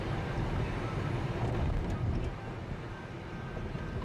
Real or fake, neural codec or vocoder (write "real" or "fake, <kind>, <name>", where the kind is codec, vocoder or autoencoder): real